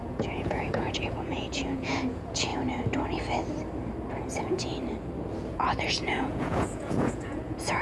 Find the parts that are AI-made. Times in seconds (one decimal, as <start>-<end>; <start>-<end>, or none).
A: 0.0-2.5; 4.1-4.7; 5.5-7.8